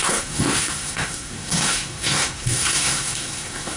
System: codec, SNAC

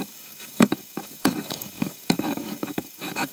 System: codec, DAC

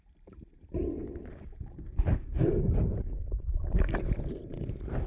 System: vocoder, BigVGAN v2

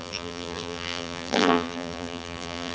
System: vocoder, BigVGAN v2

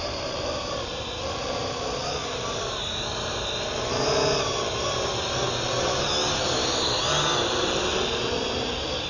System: none